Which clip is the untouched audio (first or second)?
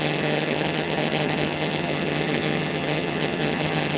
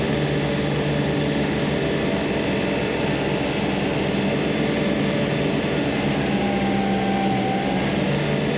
second